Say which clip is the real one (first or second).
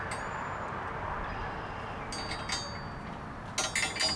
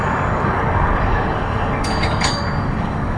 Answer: first